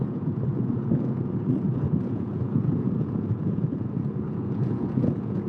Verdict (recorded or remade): remade